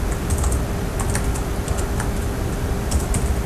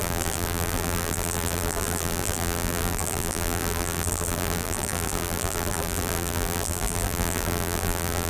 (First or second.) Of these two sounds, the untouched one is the first